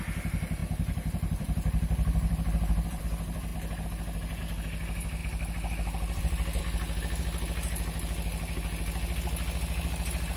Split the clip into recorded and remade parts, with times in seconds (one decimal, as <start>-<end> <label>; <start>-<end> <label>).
0.0-0.6 recorded; 0.6-3.0 remade; 3.0-5.2 recorded; 5.2-6.6 remade; 6.6-10.4 recorded